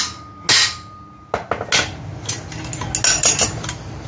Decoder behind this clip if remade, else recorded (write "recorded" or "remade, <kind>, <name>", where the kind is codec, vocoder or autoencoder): recorded